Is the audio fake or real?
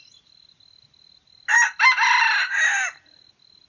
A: real